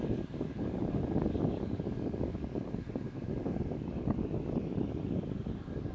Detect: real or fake fake